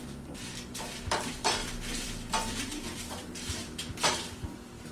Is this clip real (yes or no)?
no